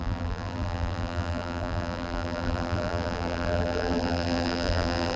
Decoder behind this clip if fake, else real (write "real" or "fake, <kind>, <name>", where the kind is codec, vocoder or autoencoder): fake, vocoder, BigVGAN v2